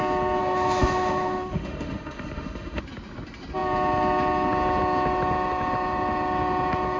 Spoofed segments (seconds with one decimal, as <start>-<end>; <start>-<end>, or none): 0.4-2.8

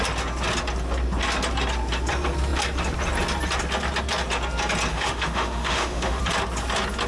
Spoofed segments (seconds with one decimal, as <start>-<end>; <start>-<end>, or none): 4.9-6.2

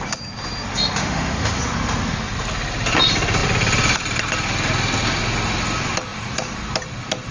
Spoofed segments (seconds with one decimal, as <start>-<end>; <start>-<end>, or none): 1.0-1.6

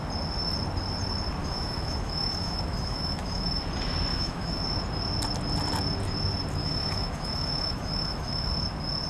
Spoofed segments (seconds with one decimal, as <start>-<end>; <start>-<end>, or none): 1.4-3.6; 4.1-4.6; 6.6-8.5

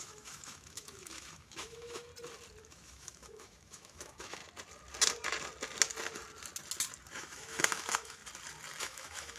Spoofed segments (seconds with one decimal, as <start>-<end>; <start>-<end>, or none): 0.0-2.1; 2.6-4.4; 7.1-8.2; 8.8-9.4